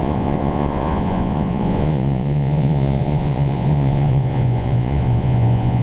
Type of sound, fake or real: fake